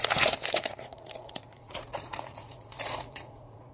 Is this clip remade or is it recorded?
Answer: remade